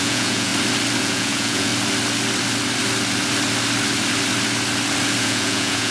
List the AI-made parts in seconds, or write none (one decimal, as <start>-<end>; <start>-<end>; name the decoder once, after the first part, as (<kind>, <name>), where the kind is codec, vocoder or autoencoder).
0.0-0.5 (vocoder, Vocos); 1.0-1.7; 5.2-5.9